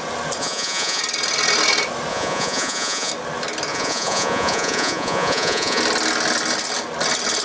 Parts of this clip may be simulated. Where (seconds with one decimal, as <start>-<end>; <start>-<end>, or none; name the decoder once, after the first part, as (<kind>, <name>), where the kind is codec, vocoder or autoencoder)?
0.4-1.0 (vocoder, Vocos); 2.1-3.1; 3.7-5.8